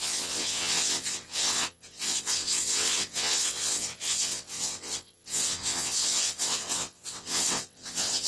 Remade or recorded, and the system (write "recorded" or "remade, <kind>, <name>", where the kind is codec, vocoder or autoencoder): remade, vocoder, WaveNeXt